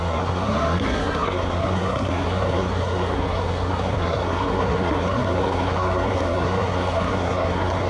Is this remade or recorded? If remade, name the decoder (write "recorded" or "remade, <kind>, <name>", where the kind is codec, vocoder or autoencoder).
remade, codec, SNAC